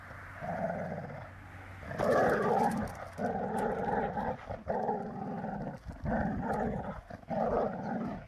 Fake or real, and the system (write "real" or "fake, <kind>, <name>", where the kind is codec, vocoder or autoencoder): real